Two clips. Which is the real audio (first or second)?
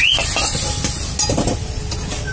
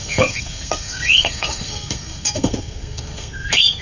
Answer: first